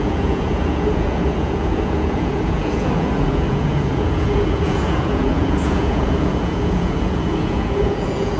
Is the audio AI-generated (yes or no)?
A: yes